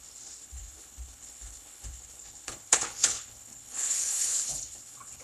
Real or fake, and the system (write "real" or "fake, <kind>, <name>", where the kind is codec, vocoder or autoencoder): fake, codec, HILCodec